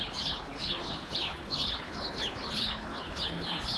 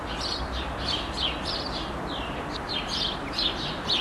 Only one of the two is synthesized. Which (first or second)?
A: first